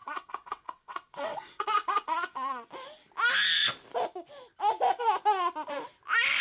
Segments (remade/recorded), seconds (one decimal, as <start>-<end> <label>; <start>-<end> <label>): 0.0-2.6 remade; 2.6-6.4 recorded